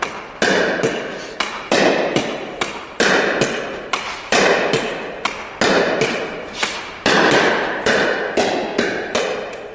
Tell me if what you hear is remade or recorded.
recorded